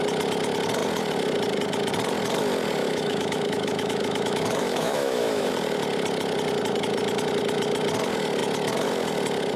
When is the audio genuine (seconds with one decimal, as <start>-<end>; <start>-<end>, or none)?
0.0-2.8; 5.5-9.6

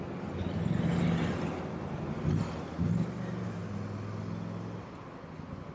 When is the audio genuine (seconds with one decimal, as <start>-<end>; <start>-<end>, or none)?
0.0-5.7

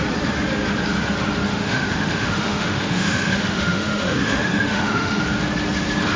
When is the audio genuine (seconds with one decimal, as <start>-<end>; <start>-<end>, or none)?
0.0-1.5; 5.2-6.2

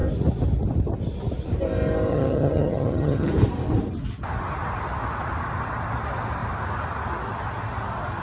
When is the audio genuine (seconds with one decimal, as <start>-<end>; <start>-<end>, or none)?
0.0-2.1; 3.3-8.2

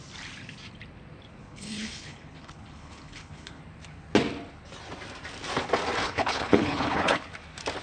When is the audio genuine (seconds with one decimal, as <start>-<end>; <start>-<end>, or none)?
0.0-1.4; 3.6-6.0; 7.3-7.8

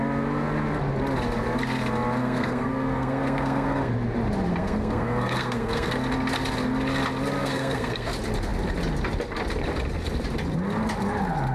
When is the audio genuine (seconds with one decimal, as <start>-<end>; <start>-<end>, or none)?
0.0-2.2; 3.9-4.5; 5.9-7.4; 8.1-11.5

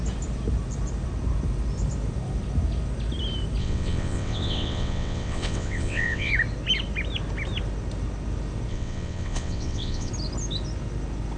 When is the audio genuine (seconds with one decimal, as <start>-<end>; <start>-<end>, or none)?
0.0-3.6; 6.3-8.7; 10.1-11.4

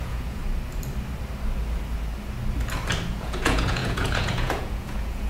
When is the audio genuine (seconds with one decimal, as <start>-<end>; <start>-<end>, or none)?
0.4-3.1